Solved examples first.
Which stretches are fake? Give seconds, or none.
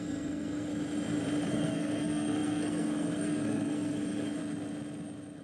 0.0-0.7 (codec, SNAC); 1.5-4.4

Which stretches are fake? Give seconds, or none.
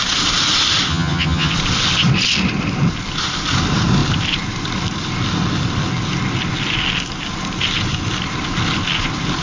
0.9-1.5 (vocoder, HiFi-GAN)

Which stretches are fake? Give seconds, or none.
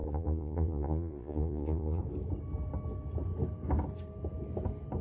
0.0-2.0 (vocoder, Vocos)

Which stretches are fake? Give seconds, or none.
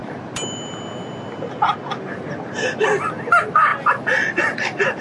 3.0-5.0 (vocoder, BigVGAN v2)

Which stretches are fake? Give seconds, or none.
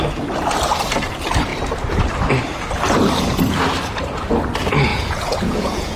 4.9-6.0 (vocoder, Vocos)